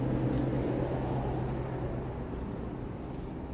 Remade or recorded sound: recorded